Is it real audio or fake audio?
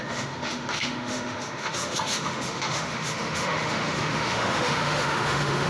fake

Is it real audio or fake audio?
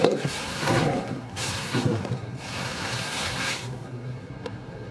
fake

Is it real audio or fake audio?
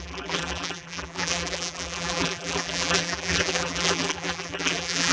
fake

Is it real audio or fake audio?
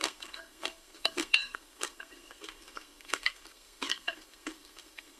fake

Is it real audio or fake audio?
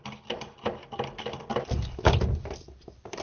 real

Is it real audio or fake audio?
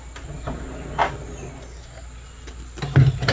real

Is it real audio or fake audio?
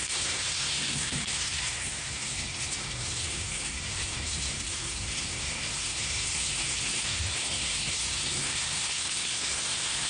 fake